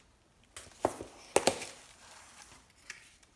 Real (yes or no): yes